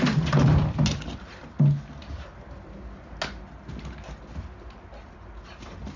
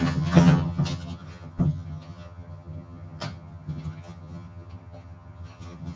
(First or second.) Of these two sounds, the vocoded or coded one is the second